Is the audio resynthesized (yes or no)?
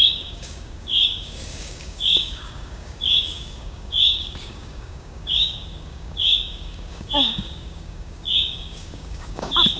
yes